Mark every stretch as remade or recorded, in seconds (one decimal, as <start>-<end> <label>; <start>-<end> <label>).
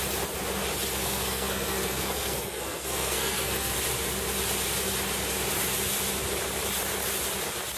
0.0-1.0 recorded; 1.0-3.7 remade; 3.7-7.8 recorded